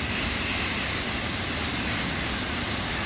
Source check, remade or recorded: recorded